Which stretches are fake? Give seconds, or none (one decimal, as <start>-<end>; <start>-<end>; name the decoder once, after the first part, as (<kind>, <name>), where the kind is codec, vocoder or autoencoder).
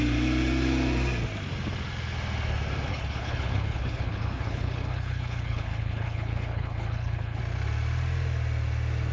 2.9-7.4 (codec, HILCodec)